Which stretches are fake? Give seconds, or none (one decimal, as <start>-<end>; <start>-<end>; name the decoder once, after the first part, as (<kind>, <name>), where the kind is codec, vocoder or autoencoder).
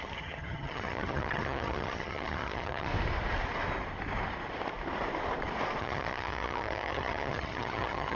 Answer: 0.0-2.9 (vocoder, HiFi-GAN); 5.8-8.1